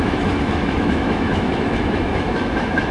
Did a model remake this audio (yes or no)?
yes